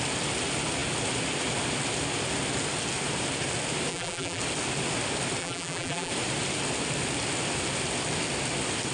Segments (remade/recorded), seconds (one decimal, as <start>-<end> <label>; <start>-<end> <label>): 0.0-3.9 recorded; 3.9-4.4 remade; 4.4-5.4 recorded; 5.4-6.1 remade; 6.1-8.9 recorded